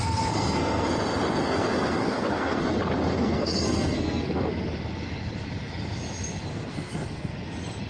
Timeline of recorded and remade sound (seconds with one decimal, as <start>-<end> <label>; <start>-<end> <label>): 0.0-0.9 remade; 0.9-1.4 recorded; 1.4-2.6 remade; 2.6-3.1 recorded; 3.1-4.5 remade; 4.5-6.5 recorded; 6.5-7.4 remade; 7.4-7.9 recorded

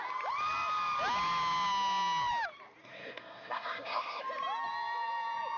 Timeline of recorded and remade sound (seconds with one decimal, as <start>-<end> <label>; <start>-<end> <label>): 0.0-2.8 recorded; 2.8-4.2 remade; 4.2-5.6 recorded

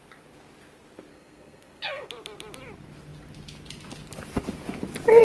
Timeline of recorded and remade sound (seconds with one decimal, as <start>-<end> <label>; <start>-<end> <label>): 0.0-1.1 recorded; 1.1-2.1 remade; 2.1-5.2 recorded

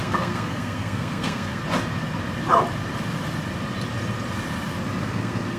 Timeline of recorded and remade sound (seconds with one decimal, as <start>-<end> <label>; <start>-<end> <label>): 0.0-1.6 remade; 1.6-5.0 recorded; 5.0-5.6 remade

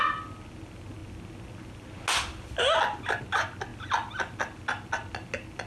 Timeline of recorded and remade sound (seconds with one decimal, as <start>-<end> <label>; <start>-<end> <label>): 0.0-5.7 recorded

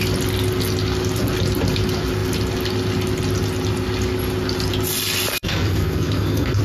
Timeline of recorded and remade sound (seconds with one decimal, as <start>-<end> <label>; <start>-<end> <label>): 0.0-5.3 recorded; 5.3-6.6 remade